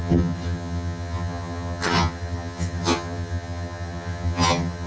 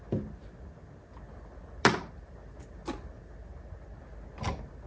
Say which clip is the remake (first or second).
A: first